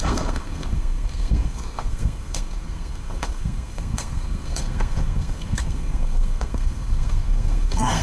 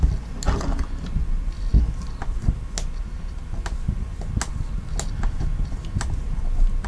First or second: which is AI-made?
first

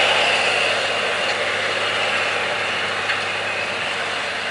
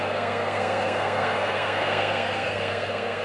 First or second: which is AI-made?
second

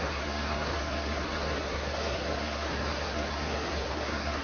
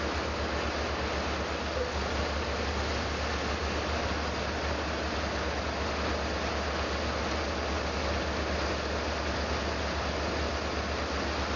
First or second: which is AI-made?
first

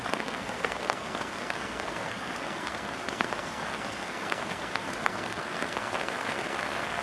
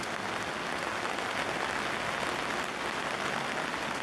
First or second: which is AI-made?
first